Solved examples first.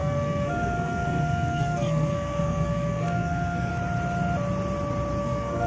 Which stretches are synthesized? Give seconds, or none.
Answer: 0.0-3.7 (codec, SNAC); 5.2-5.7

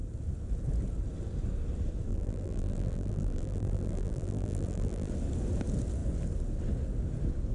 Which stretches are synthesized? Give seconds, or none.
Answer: 2.1-5.1 (vocoder, BigVGAN v2)

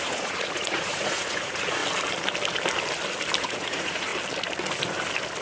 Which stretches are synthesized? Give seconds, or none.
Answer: 0.0-1.8 (vocoder, Vocos); 3.4-4.1

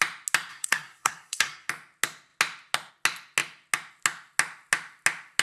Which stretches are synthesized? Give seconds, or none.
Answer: 0.5-1.7 (codec, SNAC)